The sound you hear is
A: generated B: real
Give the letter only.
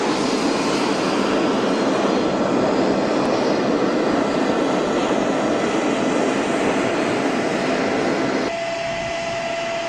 B